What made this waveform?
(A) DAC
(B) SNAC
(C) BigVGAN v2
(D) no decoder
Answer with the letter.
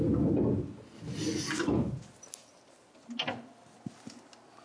D